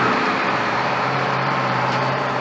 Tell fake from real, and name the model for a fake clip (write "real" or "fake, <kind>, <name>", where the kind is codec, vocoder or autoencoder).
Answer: fake, vocoder, BigVGAN v2